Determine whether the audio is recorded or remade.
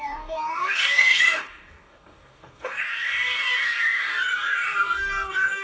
remade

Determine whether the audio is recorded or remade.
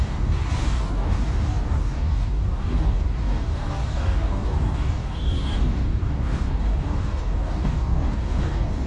remade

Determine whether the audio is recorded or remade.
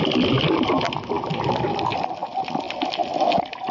recorded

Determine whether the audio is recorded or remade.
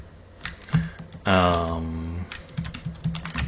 recorded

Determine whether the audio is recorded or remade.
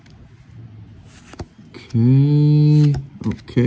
recorded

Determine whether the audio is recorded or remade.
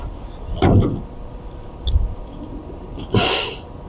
recorded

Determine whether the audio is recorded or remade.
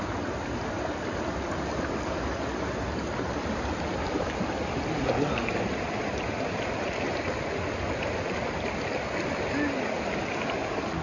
recorded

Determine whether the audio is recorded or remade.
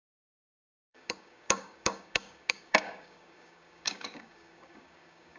remade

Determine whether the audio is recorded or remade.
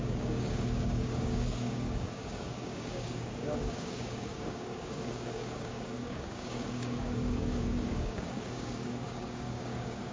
remade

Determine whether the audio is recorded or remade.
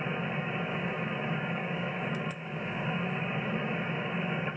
remade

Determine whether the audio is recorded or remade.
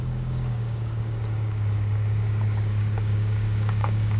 remade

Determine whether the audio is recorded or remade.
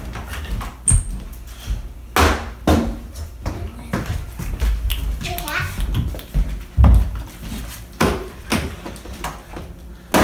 recorded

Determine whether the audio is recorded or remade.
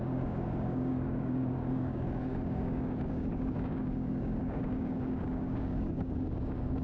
remade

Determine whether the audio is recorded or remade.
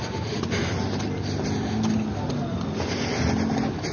recorded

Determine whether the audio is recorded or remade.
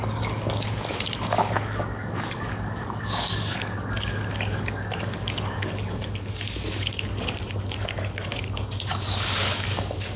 remade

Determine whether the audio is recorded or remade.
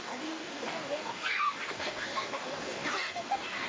remade